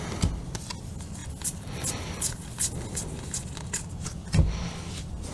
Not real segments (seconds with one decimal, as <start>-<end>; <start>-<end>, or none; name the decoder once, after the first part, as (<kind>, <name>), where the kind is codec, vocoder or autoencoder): 1.2-2.7 (vocoder, BigVGAN v2)